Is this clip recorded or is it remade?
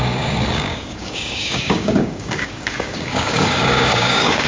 remade